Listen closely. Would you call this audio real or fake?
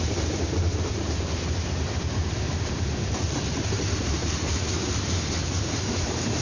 fake